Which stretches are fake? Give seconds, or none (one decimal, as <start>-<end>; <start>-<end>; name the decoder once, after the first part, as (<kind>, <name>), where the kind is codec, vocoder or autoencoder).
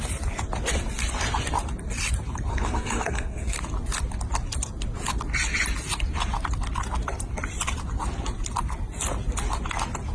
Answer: 2.5-3.6 (codec, SNAC)